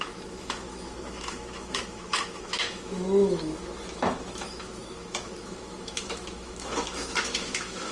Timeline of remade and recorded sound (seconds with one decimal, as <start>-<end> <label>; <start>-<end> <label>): 0.0-7.9 remade